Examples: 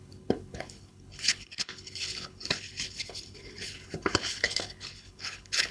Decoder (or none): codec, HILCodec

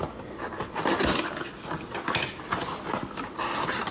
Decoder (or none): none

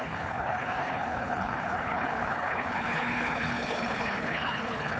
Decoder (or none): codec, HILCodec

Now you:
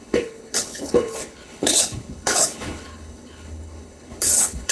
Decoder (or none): codec, HILCodec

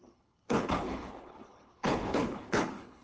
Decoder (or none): codec, HILCodec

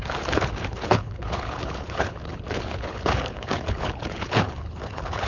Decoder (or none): codec, HILCodec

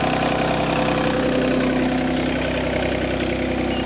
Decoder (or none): none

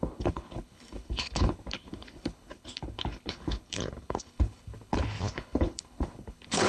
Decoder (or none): codec, HILCodec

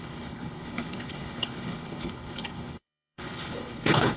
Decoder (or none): codec, HILCodec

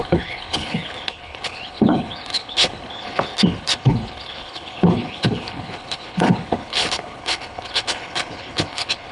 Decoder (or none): codec, HILCodec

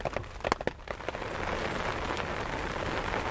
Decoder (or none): none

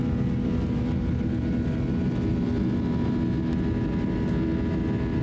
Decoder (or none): none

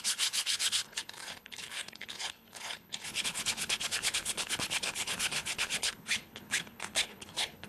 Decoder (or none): codec, HILCodec